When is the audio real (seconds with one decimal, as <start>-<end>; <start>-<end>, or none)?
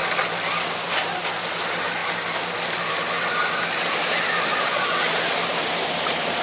0.0-4.5; 5.2-6.4